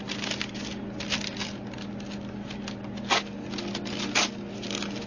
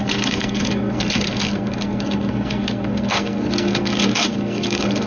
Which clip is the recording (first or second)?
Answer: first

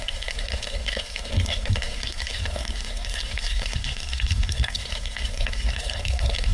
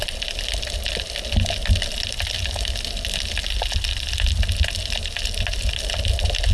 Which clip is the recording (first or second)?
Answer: second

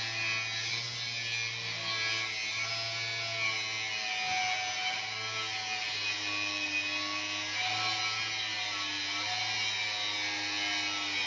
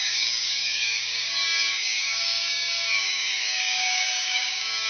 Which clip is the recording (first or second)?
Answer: first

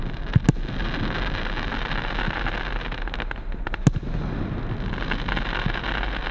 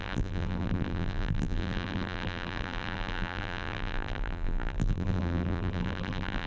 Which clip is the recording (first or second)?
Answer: first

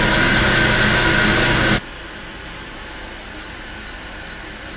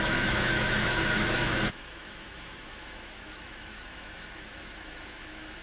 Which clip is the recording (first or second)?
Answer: first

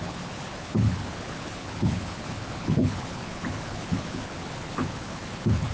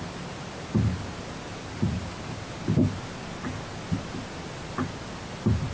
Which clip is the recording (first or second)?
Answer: second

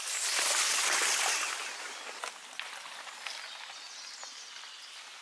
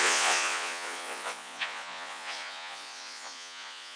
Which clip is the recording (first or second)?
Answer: first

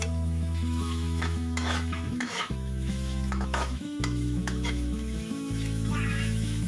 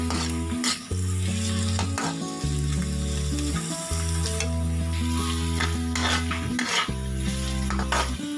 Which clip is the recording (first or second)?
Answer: second